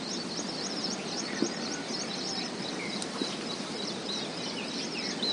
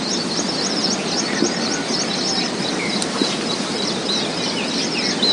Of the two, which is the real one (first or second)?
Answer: second